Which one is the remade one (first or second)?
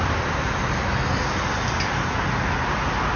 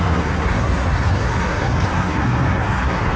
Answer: second